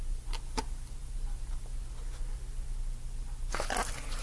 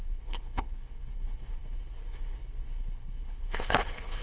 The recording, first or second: first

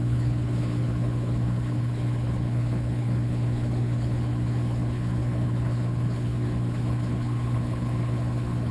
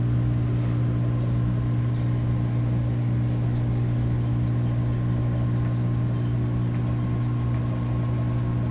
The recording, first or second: second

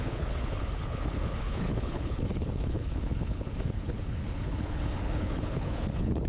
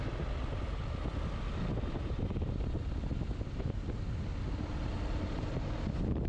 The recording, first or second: second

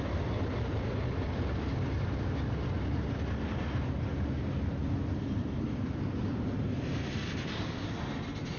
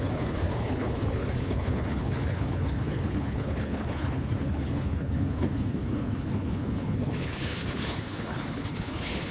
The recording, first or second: first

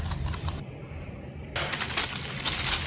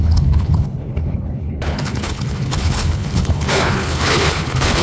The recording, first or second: first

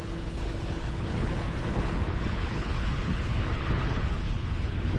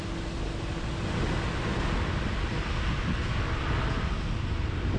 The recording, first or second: second